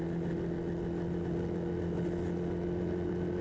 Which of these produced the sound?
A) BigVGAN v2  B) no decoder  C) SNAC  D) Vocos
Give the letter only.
B